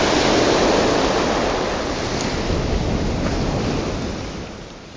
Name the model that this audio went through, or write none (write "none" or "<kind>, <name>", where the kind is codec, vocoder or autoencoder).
none